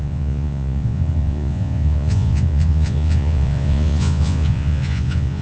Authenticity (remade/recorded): remade